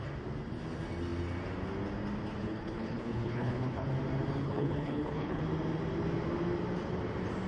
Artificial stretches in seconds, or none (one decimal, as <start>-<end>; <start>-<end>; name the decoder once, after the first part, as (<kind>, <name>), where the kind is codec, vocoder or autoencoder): 2.4-3.9 (codec, HILCodec); 4.4-5.4